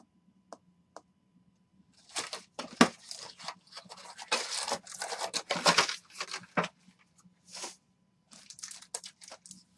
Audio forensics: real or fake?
real